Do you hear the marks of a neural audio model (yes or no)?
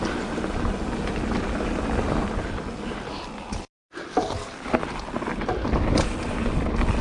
no